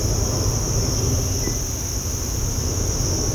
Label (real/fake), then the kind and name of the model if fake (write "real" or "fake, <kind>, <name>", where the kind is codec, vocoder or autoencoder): real